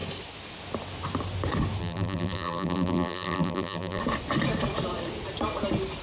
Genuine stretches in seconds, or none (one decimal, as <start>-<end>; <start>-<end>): 0.0-1.8; 4.0-6.0